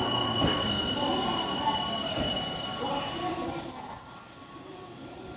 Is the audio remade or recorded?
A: recorded